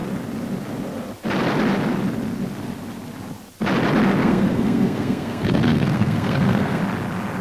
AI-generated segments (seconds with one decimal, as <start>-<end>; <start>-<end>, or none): 4.2-6.8